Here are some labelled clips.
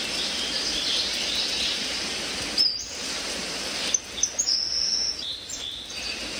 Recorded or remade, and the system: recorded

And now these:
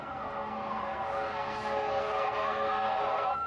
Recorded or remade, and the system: remade, codec, SNAC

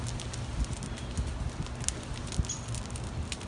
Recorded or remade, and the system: recorded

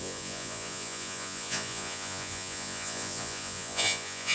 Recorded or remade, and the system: remade, vocoder, Vocos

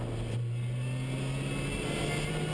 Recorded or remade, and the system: recorded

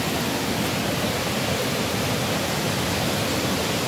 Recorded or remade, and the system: recorded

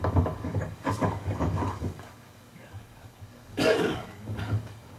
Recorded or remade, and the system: remade, codec, DAC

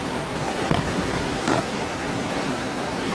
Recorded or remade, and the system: remade, codec, SNAC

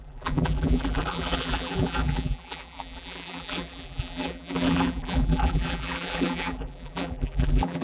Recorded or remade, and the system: remade, vocoder, BigVGAN v2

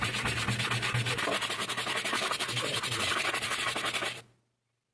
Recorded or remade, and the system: recorded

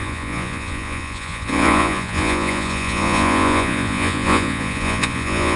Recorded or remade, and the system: remade, vocoder, Vocos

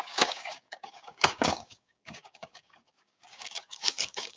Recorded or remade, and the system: remade, codec, DAC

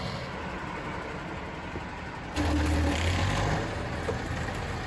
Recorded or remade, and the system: recorded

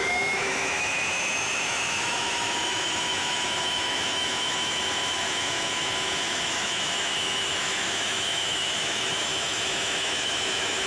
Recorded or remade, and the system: remade, autoencoder, DAC-VAE